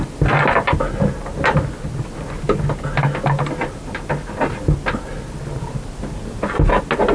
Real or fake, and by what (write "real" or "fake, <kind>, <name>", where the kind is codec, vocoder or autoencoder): real